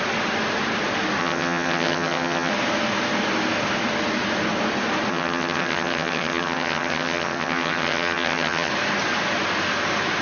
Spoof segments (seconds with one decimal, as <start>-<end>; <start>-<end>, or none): 1.2-2.5; 5.1-8.7